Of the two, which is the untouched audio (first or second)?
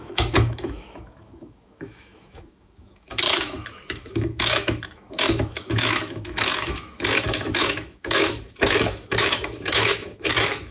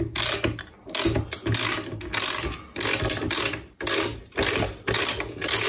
second